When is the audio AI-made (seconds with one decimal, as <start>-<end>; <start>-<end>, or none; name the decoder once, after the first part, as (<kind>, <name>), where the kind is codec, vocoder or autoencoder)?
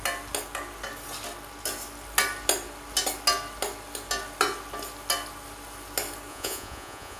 6.3-7.2 (vocoder, Vocos)